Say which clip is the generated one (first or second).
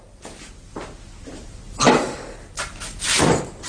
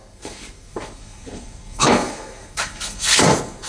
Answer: second